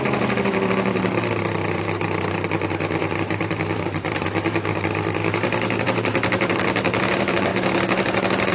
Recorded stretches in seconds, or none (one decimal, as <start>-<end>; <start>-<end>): 7.5-8.5